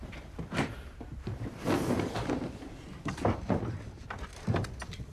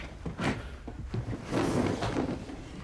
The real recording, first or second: second